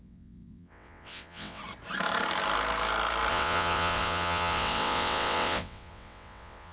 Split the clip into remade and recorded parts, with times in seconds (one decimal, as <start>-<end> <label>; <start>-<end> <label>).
0.0-1.6 remade; 1.6-3.3 recorded; 3.3-6.7 remade